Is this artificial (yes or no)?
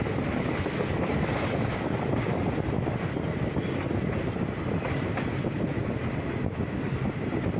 no